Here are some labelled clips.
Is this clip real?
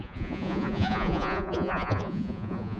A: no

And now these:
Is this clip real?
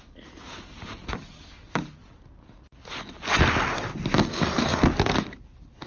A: yes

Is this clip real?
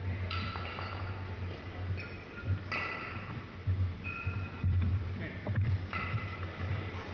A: yes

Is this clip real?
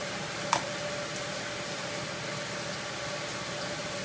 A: yes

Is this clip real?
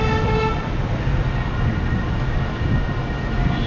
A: yes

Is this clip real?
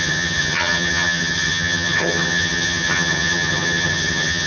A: no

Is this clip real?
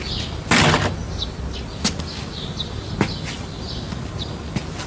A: yes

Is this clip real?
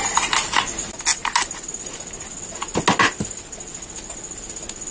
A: yes